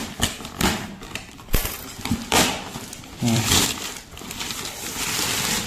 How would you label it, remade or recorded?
remade